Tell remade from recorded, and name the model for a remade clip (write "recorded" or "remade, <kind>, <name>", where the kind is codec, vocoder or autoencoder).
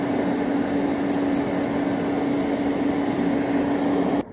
recorded